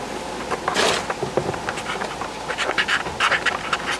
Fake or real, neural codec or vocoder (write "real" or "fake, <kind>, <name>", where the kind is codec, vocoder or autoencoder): real